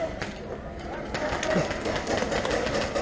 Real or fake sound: real